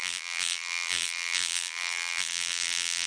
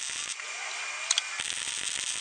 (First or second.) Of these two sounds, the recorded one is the second